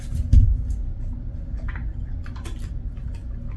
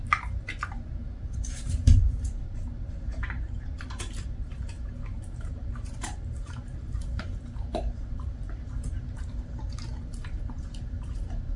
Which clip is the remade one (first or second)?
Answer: second